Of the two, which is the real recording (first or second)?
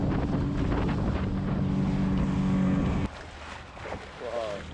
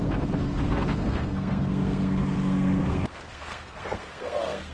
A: first